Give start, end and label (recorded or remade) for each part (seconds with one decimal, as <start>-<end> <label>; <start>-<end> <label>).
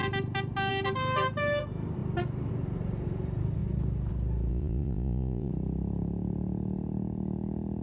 0.0-4.5 recorded; 4.5-5.5 remade; 5.5-7.8 recorded